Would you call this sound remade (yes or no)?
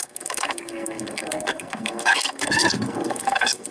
yes